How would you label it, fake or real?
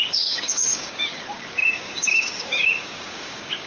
fake